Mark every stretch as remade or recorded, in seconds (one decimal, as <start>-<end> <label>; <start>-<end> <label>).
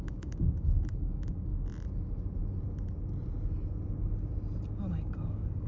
0.0-1.5 remade; 1.5-4.9 recorded; 4.9-5.7 remade